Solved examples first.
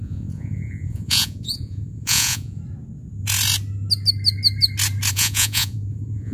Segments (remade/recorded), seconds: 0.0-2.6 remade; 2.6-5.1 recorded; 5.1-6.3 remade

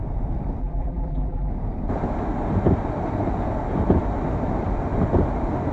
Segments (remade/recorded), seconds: 0.0-0.6 recorded; 0.6-1.5 remade; 1.5-5.7 recorded

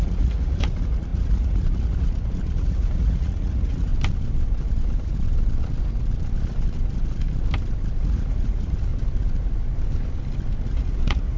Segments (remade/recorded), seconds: 0.0-3.9 remade; 3.9-8.0 recorded; 8.0-8.9 remade; 8.9-10.7 recorded; 10.7-11.4 remade

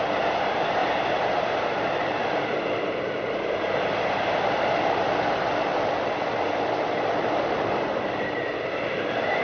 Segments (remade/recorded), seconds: 0.0-0.8 recorded; 0.8-1.6 remade; 1.6-9.4 recorded

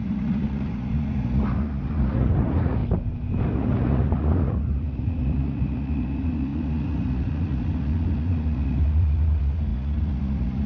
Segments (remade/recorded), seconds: 0.0-2.8 remade; 2.8-3.5 recorded; 3.5-10.7 remade

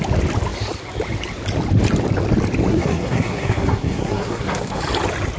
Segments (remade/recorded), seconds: 0.0-2.7 recorded; 2.7-4.8 remade; 4.8-5.4 recorded